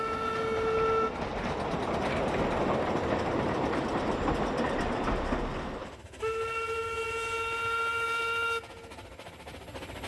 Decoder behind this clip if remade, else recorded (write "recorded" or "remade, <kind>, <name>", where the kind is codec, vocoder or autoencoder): recorded